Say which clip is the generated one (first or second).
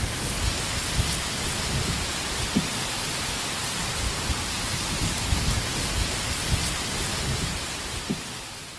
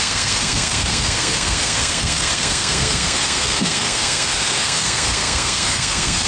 second